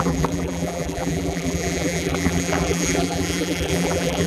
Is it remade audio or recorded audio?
remade